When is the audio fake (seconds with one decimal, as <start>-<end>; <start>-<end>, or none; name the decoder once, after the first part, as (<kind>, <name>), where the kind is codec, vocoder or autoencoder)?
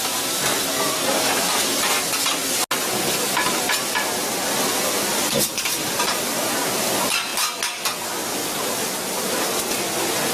none